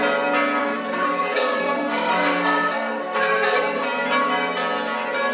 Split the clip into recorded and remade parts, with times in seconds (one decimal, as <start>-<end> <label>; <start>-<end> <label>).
0.0-0.6 recorded; 0.6-3.8 remade; 3.8-5.3 recorded